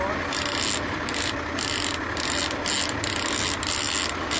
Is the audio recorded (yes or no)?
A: yes